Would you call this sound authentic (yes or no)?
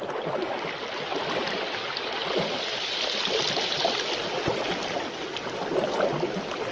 yes